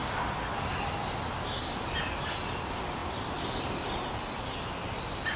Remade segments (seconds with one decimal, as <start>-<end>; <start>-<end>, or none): none